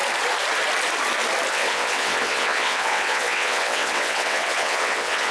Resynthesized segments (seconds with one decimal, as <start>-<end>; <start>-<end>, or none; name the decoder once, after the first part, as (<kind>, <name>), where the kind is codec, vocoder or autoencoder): 1.5-5.3 (vocoder, WaveNeXt)